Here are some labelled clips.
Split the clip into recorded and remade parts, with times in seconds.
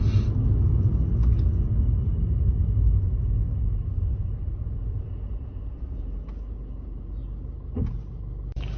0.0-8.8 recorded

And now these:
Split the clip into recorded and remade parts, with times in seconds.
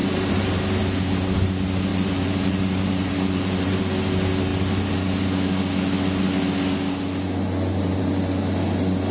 0.0-0.5 remade; 0.5-1.9 recorded; 1.9-3.8 remade; 3.8-9.1 recorded